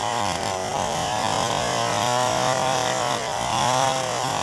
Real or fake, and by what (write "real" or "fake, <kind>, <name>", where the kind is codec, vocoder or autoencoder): fake, vocoder, BigVGAN v2